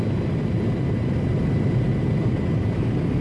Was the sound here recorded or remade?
recorded